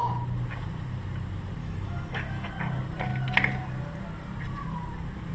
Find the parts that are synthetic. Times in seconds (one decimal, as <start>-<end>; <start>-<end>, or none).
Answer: 1.6-2.5